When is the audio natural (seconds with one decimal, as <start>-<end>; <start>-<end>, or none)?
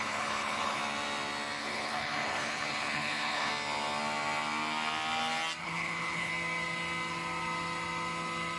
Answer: 0.8-1.6; 3.5-5.6; 6.3-8.6